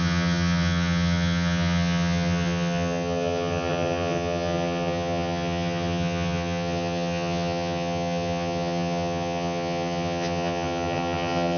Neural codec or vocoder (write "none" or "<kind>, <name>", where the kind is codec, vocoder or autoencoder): vocoder, HiFi-GAN